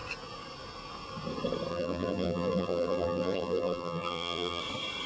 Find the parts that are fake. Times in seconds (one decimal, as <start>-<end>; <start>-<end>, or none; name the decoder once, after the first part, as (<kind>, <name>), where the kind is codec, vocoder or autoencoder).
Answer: 1.7-4.6 (vocoder, BigVGAN v2)